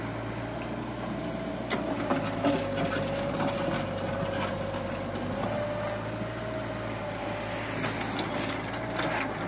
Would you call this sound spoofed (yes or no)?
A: no